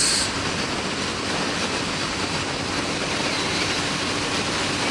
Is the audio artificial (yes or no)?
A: no